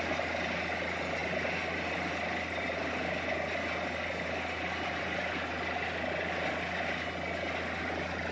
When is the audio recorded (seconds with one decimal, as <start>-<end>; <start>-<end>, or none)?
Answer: 0.0-8.3